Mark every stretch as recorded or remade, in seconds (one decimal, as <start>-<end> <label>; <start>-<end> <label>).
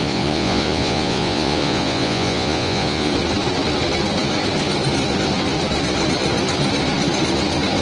0.0-3.1 remade; 3.1-7.8 recorded